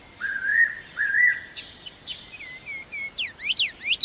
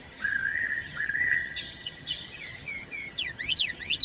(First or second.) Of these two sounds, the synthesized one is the second